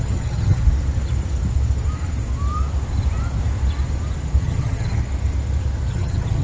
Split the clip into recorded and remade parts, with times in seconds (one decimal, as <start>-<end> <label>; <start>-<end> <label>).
0.0-0.6 remade; 0.6-4.4 recorded; 4.4-5.0 remade; 5.0-5.9 recorded; 5.9-6.4 remade

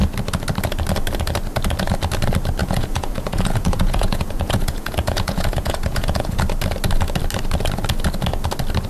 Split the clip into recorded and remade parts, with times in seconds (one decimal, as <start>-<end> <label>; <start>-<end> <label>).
0.0-2.6 recorded; 2.6-6.4 remade; 6.4-8.9 recorded

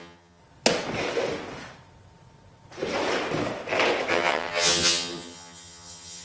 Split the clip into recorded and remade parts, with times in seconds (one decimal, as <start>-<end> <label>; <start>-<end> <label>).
0.0-0.4 remade; 0.4-4.1 recorded; 4.1-6.2 remade

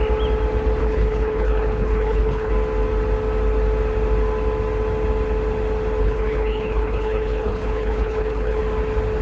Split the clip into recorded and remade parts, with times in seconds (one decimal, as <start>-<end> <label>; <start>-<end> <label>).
0.0-0.8 recorded; 0.8-2.5 remade; 2.5-6.0 recorded; 6.0-8.6 remade; 8.6-9.2 recorded

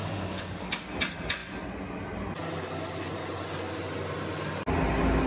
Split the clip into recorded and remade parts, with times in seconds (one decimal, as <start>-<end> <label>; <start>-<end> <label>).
0.0-0.7 remade; 0.7-5.3 recorded

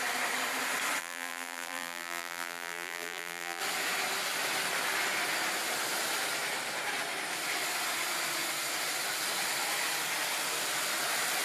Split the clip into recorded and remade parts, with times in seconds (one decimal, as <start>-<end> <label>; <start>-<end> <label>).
0.0-1.0 recorded; 1.0-3.6 remade; 3.6-11.4 recorded

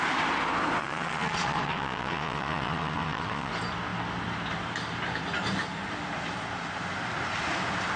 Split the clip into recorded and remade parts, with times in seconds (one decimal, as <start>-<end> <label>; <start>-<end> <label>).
0.0-0.8 recorded; 0.8-3.5 remade; 3.5-8.0 recorded

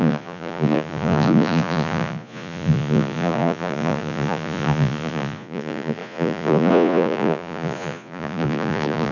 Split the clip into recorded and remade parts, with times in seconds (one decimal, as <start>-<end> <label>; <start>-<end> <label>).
0.0-9.1 remade